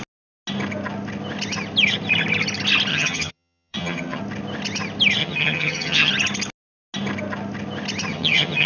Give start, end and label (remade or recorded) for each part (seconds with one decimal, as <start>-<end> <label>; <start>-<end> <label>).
0.0-2.9 recorded; 2.9-4.2 remade; 4.2-5.2 recorded; 5.2-6.1 remade; 6.1-8.1 recorded; 8.1-8.7 remade